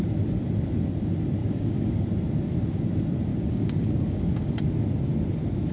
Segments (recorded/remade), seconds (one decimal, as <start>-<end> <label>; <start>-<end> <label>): 0.0-1.4 recorded; 1.4-2.1 remade; 2.1-3.3 recorded; 3.3-4.5 remade; 4.5-5.7 recorded